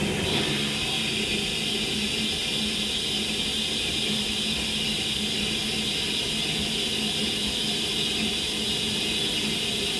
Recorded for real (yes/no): yes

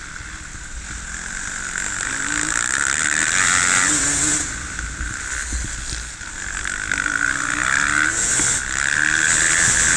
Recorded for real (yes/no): yes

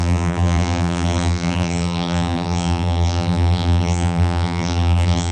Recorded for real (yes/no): no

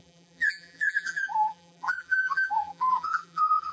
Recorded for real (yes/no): no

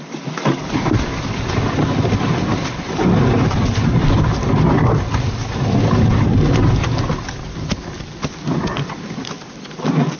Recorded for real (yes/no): no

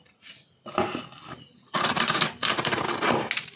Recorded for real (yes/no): yes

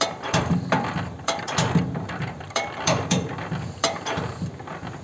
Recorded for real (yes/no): no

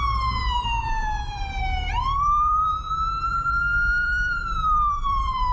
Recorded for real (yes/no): no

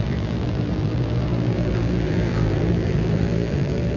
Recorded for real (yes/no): no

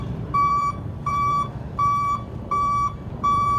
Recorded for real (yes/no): no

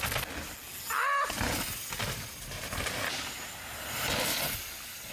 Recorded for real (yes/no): yes